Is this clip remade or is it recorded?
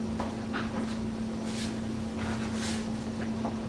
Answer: recorded